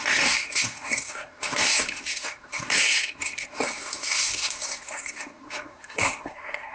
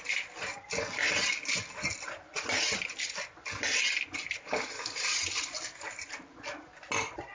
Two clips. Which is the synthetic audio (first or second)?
first